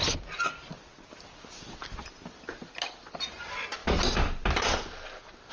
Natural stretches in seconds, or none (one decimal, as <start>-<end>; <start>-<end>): 0.0-5.5